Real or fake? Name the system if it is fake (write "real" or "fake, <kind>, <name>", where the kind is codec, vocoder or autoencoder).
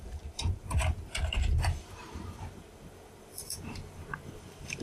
fake, vocoder, BigVGAN v2